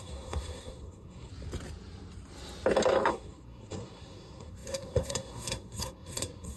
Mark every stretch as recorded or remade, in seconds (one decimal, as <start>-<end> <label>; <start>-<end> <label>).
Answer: 0.0-1.3 remade; 1.3-3.1 recorded; 3.1-6.6 remade